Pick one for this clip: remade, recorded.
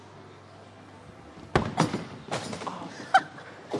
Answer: recorded